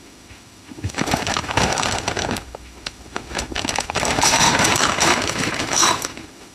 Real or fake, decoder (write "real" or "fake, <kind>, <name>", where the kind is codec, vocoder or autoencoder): fake, autoencoder, DAC-VAE